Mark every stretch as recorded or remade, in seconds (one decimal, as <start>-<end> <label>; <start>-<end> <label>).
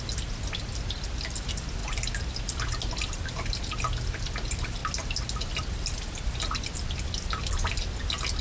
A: 0.0-8.4 recorded